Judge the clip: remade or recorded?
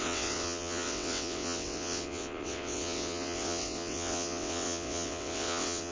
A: remade